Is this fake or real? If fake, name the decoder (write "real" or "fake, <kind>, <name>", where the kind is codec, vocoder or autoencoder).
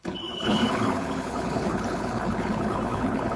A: fake, codec, HILCodec